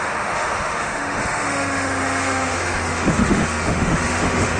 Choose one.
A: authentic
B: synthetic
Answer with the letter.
B